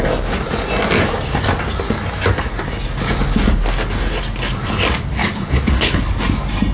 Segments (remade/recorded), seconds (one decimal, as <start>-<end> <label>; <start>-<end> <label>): 0.0-5.2 recorded; 5.2-6.0 remade; 6.0-6.7 recorded